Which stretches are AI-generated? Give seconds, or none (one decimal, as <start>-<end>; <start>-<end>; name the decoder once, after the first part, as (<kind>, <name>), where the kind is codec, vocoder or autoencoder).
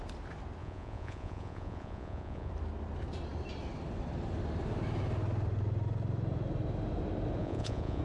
0.6-2.5 (vocoder, Vocos); 7.4-8.0